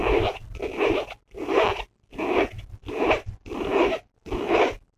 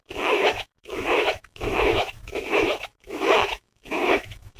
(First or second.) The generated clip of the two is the second